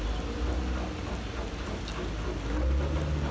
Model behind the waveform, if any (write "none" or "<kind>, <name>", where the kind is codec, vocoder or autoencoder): none